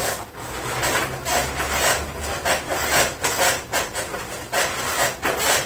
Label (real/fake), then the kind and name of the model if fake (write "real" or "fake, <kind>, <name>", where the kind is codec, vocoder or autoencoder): real